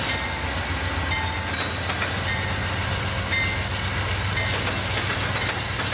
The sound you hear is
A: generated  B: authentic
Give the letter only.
B